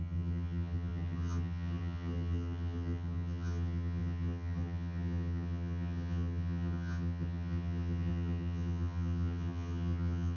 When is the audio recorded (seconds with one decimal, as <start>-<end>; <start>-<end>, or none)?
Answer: none